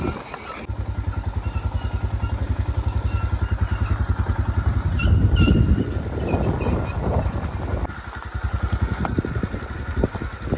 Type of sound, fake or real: real